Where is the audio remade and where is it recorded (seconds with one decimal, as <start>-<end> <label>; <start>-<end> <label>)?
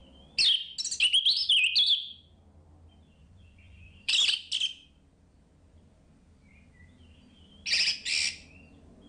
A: 0.0-3.2 recorded; 3.2-4.1 remade; 4.1-9.1 recorded